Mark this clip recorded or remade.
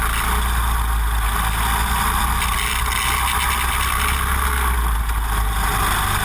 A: recorded